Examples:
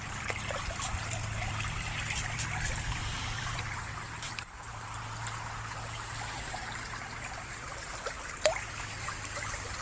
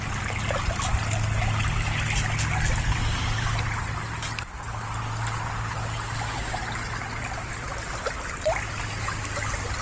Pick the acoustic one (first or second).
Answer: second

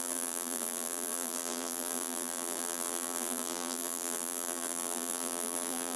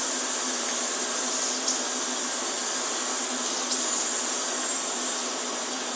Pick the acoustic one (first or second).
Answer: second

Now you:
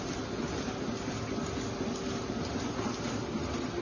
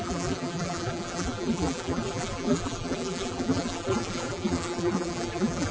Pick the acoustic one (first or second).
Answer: first